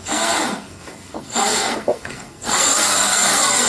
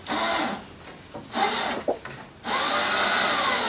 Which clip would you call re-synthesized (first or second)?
first